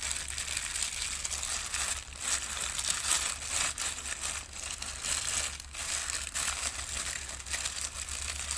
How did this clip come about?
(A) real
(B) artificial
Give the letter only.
A